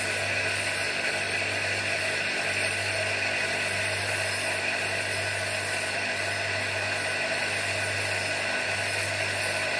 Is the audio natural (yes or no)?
yes